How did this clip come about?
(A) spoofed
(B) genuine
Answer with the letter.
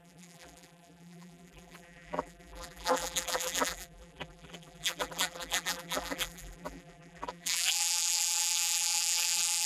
A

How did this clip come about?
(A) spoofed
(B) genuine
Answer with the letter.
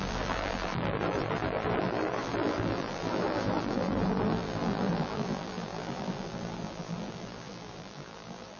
A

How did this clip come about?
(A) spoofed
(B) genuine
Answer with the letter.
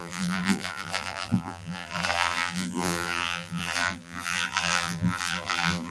A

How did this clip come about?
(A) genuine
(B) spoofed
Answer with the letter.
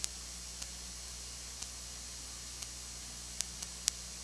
A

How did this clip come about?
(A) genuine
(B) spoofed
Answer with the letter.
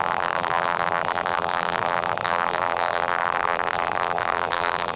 B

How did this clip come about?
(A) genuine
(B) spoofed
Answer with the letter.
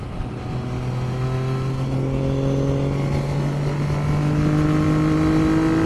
A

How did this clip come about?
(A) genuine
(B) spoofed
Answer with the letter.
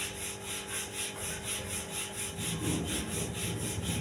A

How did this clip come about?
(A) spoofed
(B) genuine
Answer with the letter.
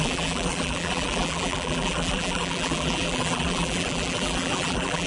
A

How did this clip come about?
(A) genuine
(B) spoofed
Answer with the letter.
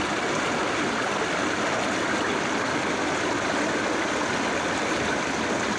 A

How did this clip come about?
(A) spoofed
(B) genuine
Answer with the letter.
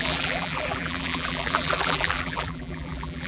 A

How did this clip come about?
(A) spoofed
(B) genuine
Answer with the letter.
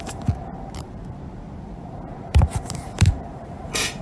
A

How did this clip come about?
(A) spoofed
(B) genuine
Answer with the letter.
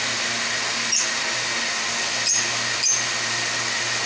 B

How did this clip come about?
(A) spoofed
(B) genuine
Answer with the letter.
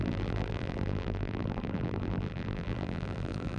A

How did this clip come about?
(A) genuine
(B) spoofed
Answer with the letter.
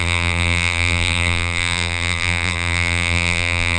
B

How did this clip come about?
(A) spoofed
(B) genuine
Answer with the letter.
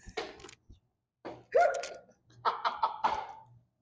A